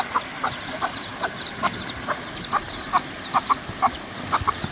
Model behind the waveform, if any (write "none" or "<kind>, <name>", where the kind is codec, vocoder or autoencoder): none